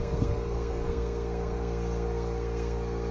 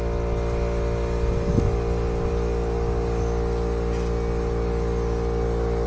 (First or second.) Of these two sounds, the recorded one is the second